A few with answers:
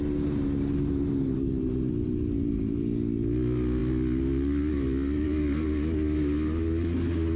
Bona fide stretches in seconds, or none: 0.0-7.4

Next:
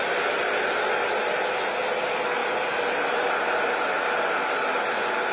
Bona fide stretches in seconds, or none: 0.0-5.3

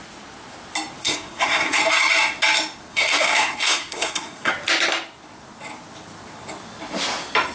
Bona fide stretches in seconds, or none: 0.0-1.0; 1.8-2.9; 4.5-7.5

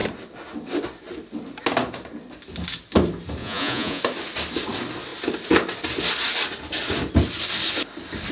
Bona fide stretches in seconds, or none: 0.0-3.4; 4.0-8.3

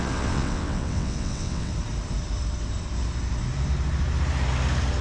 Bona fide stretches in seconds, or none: 1.7-5.0

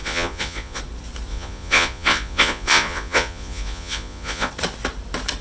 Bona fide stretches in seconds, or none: 0.8-1.3; 4.5-5.4